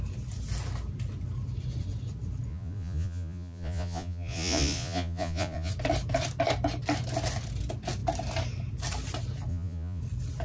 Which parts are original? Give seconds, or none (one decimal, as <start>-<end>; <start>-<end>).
0.0-2.5; 5.7-9.5; 10.0-10.4